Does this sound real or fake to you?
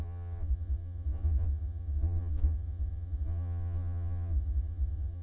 fake